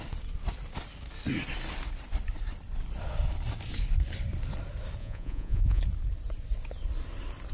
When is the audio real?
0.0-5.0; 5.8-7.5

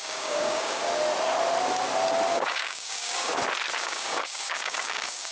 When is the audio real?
0.8-2.3; 3.3-3.8

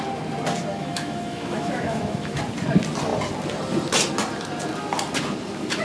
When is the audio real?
0.0-0.7; 2.4-5.8

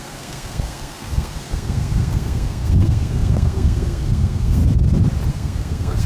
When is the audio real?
4.6-5.3

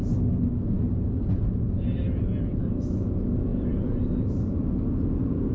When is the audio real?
0.0-5.5

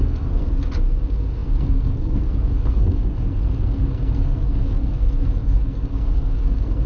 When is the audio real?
none

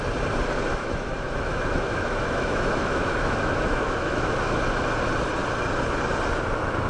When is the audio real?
0.0-0.7; 4.6-6.9